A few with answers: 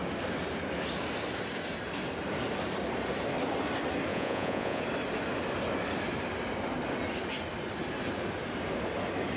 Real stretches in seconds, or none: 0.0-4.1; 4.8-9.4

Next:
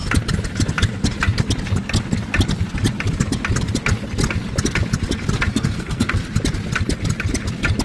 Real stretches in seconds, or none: 0.0-5.5; 6.1-7.8